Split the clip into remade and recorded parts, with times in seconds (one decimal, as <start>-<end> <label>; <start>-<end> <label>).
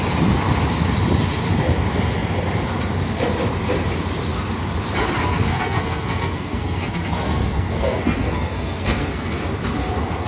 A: 0.0-5.5 recorded; 5.5-9.4 remade; 9.4-10.3 recorded